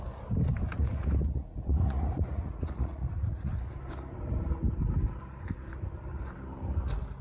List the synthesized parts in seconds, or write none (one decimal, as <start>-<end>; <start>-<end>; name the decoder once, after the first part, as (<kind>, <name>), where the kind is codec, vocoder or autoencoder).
0.7-3.5 (vocoder, Vocos)